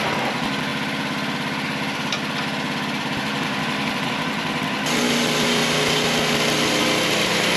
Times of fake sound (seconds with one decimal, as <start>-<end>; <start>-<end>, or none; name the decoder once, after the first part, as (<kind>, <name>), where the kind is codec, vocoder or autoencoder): none